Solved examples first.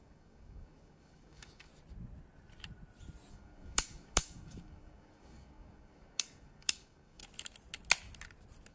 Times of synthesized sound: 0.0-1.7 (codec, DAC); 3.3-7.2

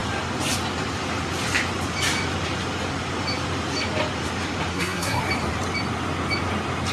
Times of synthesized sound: 4.7-5.2 (codec, SNAC)

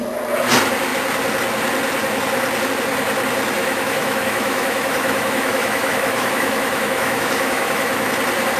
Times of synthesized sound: 3.6-8.1 (autoencoder, DAC-VAE)

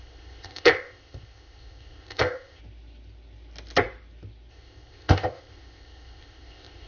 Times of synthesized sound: 0.0-2.6 (codec, ZipCodec); 4.5-6.9